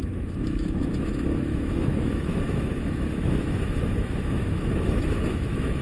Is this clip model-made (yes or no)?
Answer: yes